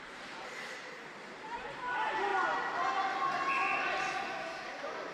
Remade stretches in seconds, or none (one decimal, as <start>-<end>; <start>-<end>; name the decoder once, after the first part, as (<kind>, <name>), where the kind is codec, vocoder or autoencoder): 0.0-2.3 (vocoder, BigVGAN v2); 4.5-5.1